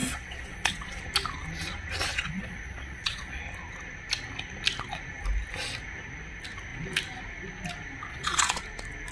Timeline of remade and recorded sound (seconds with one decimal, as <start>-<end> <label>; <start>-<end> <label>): 0.0-1.0 remade; 1.0-2.1 recorded; 2.1-3.4 remade; 3.4-8.1 recorded; 8.1-8.6 remade; 8.6-9.1 recorded